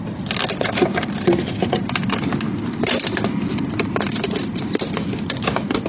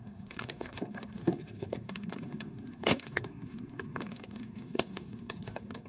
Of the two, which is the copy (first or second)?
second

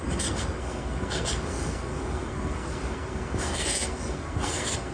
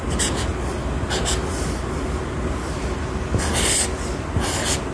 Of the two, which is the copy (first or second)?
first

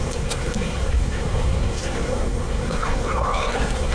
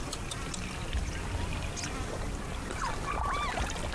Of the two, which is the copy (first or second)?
first